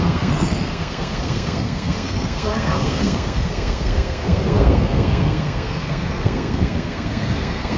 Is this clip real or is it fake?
fake